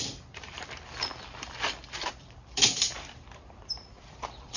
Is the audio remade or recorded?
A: remade